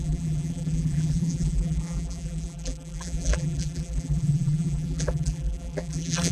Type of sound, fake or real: fake